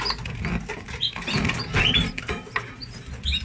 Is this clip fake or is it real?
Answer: real